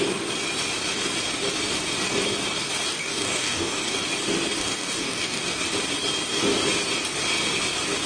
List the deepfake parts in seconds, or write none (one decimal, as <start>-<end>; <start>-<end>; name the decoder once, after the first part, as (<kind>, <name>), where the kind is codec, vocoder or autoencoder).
2.9-4.0 (codec, DAC); 4.6-5.4